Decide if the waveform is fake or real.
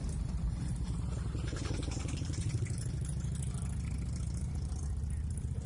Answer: fake